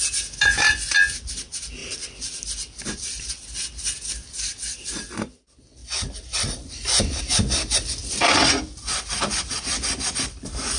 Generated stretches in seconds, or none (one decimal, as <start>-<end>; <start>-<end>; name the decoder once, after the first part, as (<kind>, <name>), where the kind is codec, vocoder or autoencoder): 1.8-3.3 (vocoder, BigVGAN v2); 5.8-7.2; 8.0-8.9